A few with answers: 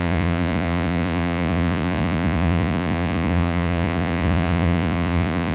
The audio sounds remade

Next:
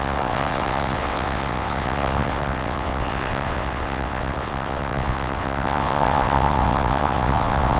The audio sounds remade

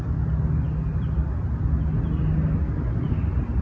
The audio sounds recorded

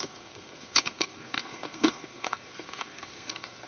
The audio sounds remade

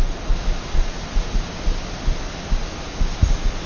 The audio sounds recorded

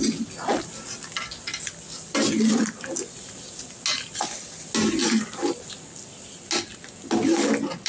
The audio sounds recorded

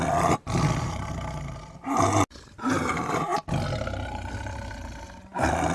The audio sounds recorded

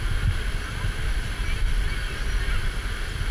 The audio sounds recorded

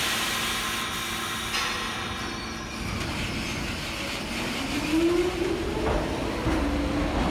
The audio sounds recorded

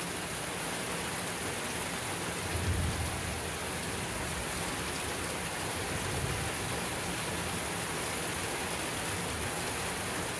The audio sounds recorded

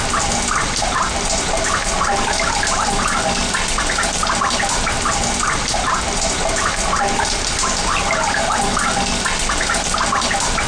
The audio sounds recorded